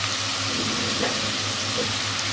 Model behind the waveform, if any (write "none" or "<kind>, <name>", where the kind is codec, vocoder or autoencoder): none